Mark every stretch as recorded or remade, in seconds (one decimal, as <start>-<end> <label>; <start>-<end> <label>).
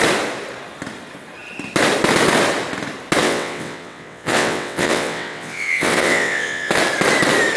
0.0-3.2 recorded; 3.2-6.7 remade; 6.7-7.6 recorded